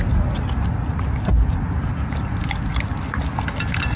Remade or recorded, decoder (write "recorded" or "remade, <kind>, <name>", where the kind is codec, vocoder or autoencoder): recorded